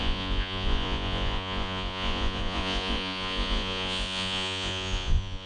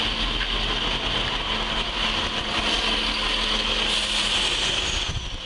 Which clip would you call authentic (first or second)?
second